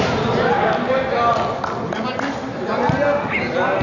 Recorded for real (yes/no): yes